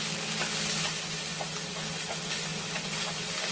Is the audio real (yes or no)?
yes